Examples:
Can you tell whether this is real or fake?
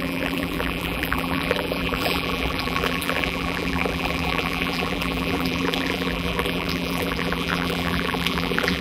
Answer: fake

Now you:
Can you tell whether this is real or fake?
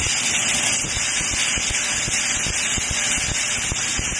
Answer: real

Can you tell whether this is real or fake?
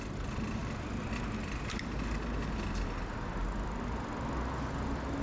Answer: real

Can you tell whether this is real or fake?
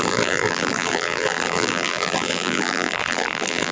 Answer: fake